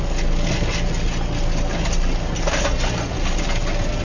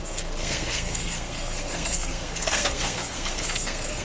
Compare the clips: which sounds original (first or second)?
first